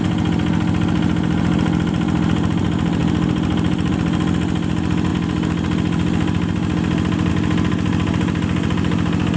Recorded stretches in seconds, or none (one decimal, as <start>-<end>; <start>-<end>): 0.0-9.4